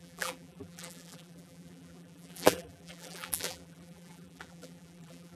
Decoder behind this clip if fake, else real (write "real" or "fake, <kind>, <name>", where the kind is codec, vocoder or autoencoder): fake, vocoder, BigVGAN v2